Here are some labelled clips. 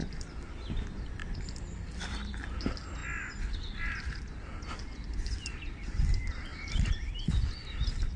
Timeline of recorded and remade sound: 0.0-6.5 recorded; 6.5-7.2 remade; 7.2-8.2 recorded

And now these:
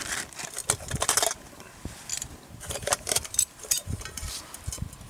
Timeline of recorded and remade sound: 0.0-2.1 recorded; 2.1-4.6 remade; 4.6-5.1 recorded

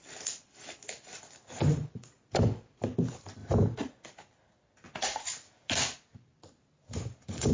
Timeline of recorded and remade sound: 0.0-3.4 recorded; 3.4-4.0 remade; 4.0-7.5 recorded

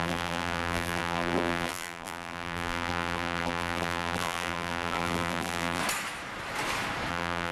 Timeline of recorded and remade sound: 0.0-5.8 remade; 5.8-7.1 recorded; 7.1-7.5 remade

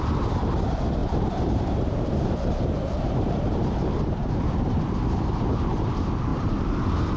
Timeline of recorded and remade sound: 0.0-1.0 recorded; 1.0-4.8 remade; 4.8-6.3 recorded; 6.3-6.8 remade; 6.8-7.2 recorded

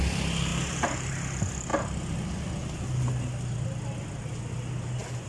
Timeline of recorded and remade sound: 0.0-0.5 recorded; 0.5-1.1 remade; 1.1-5.3 recorded

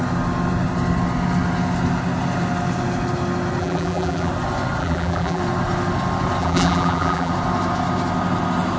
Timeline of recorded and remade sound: 0.0-3.6 recorded; 3.6-4.3 remade; 4.3-4.8 recorded; 4.8-5.4 remade; 5.4-6.4 recorded; 6.4-7.3 remade; 7.3-8.8 recorded

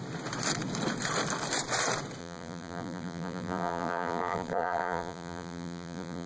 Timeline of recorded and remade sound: 0.0-2.2 recorded; 2.2-6.3 remade